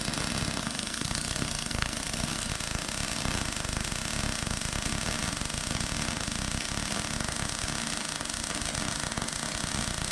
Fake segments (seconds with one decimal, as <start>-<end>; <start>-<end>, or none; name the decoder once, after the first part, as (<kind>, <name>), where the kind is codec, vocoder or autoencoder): 0.6-2.5 (codec, SNAC)